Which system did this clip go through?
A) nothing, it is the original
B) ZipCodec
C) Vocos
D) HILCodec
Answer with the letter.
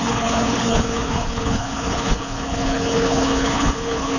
D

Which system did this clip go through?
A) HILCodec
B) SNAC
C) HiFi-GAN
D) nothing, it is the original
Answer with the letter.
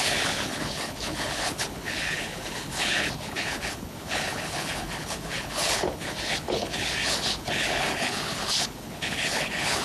A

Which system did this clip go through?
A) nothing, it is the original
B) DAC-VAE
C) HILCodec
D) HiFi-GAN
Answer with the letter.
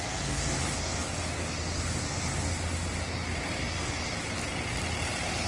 A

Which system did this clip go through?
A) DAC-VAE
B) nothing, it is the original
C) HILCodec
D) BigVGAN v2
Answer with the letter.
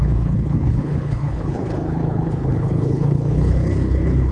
C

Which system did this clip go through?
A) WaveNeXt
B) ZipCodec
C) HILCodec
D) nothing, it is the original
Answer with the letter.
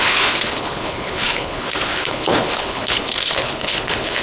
C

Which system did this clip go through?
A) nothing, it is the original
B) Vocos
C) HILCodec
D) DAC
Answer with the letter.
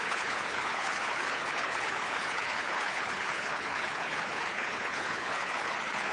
C